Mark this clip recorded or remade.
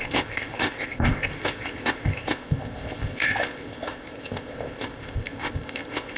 remade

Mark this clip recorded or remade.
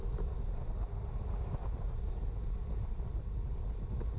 recorded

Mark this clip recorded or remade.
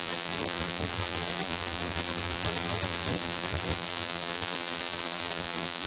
remade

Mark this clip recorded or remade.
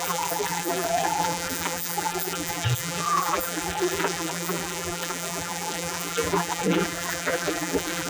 remade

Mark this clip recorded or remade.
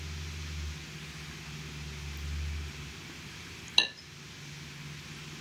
recorded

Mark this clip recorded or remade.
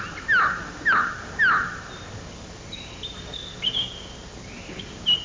recorded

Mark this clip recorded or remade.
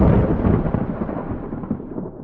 recorded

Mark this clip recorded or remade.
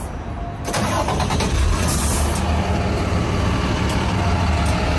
recorded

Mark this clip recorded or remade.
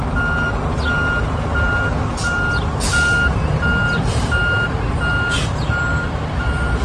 recorded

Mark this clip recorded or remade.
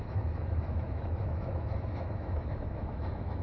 remade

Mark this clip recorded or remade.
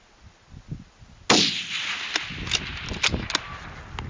recorded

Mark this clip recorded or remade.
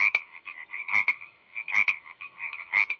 remade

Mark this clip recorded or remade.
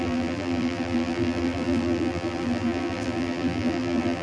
remade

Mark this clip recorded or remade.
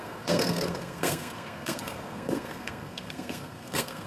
remade